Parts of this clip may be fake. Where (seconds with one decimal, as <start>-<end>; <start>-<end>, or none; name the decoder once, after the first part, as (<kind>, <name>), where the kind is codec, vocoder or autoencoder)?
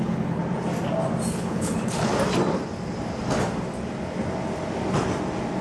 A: 0.0-0.4 (codec, HILCodec); 1.3-2.1